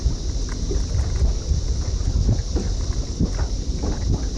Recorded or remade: recorded